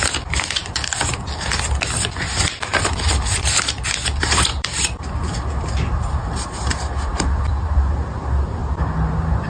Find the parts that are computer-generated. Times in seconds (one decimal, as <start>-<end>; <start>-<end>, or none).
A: 0.0-8.6